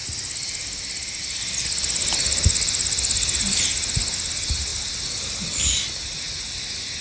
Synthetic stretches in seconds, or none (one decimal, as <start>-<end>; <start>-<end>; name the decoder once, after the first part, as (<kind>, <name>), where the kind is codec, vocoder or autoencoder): none